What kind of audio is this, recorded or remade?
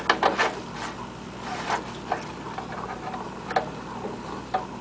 recorded